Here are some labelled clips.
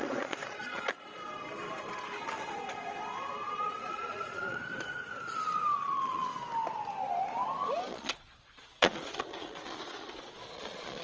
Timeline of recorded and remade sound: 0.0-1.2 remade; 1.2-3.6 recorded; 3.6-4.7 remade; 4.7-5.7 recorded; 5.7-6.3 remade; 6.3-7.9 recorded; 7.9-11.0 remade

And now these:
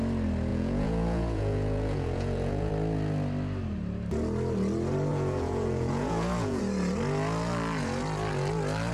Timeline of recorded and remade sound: 0.0-0.5 recorded; 0.5-2.7 remade; 2.7-5.1 recorded; 5.1-6.6 remade; 6.6-8.9 recorded

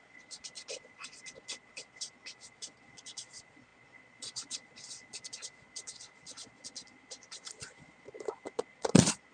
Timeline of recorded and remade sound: 0.0-9.3 remade

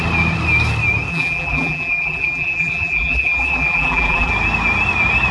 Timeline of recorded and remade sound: 0.0-1.1 recorded; 1.1-4.3 remade; 4.3-5.3 recorded

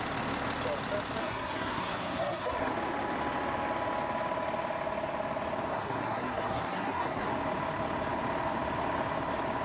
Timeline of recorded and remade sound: 0.0-1.2 recorded; 1.2-2.7 remade; 2.7-5.7 recorded; 5.7-7.3 remade; 7.3-9.6 recorded

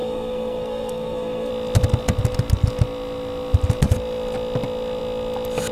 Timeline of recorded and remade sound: 0.0-1.5 remade; 1.5-5.7 recorded

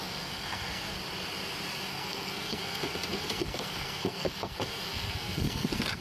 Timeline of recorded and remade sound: 0.0-0.9 remade; 0.9-1.9 recorded; 1.9-6.0 remade

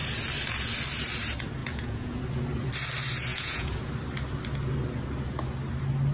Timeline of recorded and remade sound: 0.0-1.6 recorded; 1.6-2.2 remade; 2.2-3.3 recorded; 3.3-3.9 remade; 3.9-6.1 recorded